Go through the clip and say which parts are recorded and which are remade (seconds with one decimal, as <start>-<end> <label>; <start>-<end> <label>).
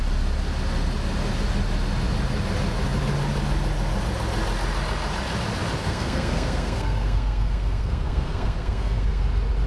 0.0-5.8 recorded; 5.8-9.2 remade; 9.2-9.7 recorded